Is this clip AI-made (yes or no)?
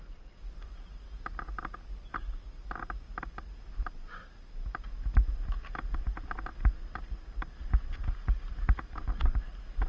no